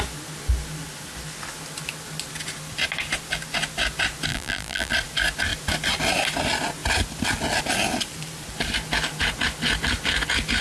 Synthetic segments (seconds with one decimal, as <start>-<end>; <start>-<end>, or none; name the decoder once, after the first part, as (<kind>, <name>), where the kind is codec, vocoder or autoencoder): 4.3-4.9 (vocoder, BigVGAN v2)